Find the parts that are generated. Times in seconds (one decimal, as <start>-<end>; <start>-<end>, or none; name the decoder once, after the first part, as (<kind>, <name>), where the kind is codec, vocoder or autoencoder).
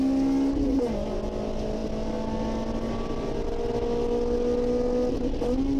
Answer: none